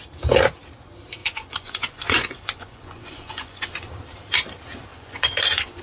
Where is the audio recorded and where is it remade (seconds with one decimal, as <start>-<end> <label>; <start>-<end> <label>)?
0.0-1.2 recorded; 1.2-3.9 remade; 3.9-4.9 recorded; 4.9-5.8 remade